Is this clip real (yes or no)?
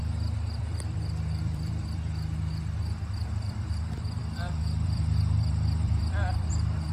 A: no